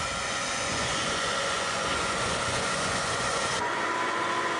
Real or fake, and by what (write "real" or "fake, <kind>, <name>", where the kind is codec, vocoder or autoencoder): fake, vocoder, Vocos